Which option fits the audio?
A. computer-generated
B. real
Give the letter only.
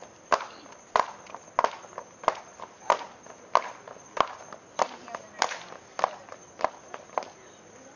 B